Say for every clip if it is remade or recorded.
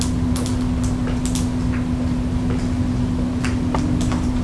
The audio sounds recorded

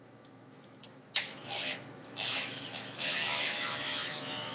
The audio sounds remade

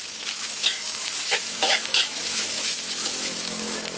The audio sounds remade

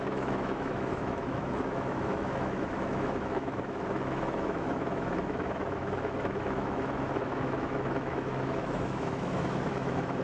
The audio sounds remade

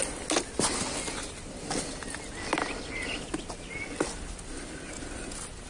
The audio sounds recorded